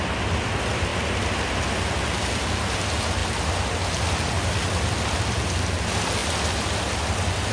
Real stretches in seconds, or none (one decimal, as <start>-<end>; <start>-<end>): 0.0-7.5

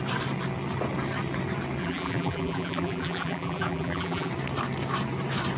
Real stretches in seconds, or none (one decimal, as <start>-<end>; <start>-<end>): 0.0-1.8; 4.3-5.6

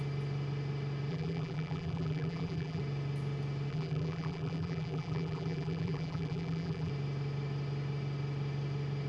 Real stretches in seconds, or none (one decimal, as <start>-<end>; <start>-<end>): 0.0-1.1; 2.8-3.7; 6.9-9.1